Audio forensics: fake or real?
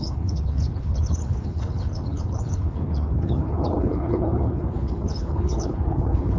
fake